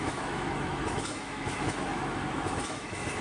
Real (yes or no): no